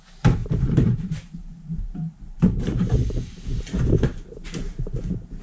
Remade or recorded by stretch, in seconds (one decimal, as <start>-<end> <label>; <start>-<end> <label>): 0.0-0.4 recorded; 0.4-3.6 remade; 3.6-4.1 recorded; 4.1-4.7 remade; 4.7-5.4 recorded